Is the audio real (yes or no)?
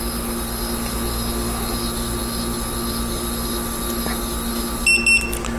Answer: yes